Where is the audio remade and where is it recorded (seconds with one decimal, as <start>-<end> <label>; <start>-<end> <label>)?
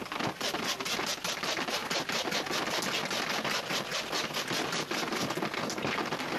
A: 0.0-1.8 remade; 1.8-2.7 recorded; 2.7-6.4 remade